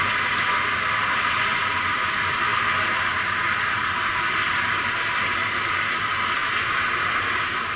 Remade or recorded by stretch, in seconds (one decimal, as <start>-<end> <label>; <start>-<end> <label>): 0.0-6.4 recorded; 6.4-7.8 remade

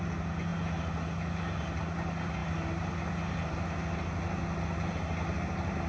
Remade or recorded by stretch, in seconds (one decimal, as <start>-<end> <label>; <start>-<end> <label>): 0.0-5.9 recorded

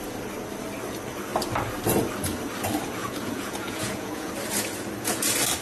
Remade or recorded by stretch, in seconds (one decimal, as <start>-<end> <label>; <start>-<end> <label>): 0.0-3.0 recorded; 3.0-4.3 remade; 4.3-5.6 recorded

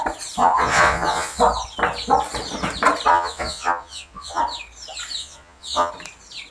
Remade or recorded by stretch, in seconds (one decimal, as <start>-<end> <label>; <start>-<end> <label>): 0.0-0.4 recorded; 0.4-1.4 remade; 1.4-3.1 recorded; 3.1-4.4 remade; 4.4-5.2 recorded; 5.2-5.9 remade; 5.9-6.5 recorded

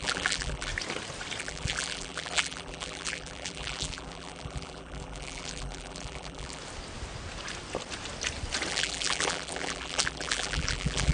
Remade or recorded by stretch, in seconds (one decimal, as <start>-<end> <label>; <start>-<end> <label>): 0.0-0.7 remade; 0.7-1.4 recorded; 1.4-6.6 remade; 6.6-8.7 recorded; 8.7-11.1 remade

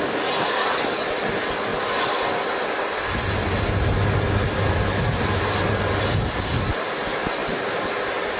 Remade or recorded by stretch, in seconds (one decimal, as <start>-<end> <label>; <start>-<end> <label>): 0.0-1.7 recorded; 1.7-3.7 remade; 3.7-7.4 recorded; 7.4-8.4 remade

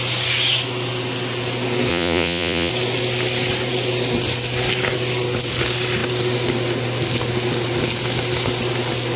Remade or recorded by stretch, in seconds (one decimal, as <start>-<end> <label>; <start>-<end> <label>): 0.0-1.9 recorded; 1.9-2.7 remade; 2.7-9.2 recorded

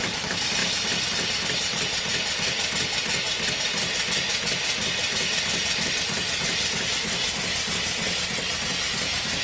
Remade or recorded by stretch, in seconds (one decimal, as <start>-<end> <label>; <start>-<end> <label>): 0.0-9.4 recorded